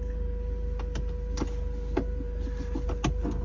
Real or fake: real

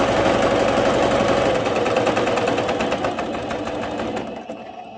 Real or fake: real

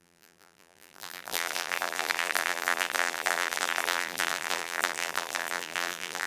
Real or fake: fake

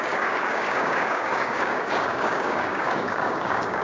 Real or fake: fake